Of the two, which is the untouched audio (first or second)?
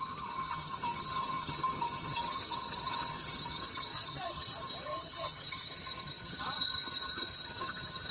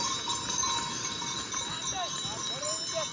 second